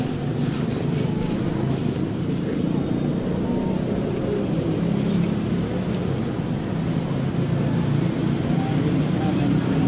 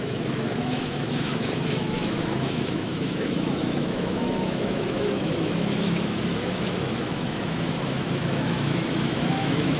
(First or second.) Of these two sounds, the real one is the first